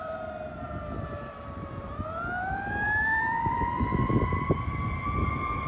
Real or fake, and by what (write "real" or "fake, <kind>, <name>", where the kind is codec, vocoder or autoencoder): fake, vocoder, BigVGAN v2